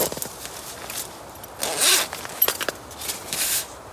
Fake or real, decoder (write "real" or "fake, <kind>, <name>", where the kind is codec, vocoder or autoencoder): real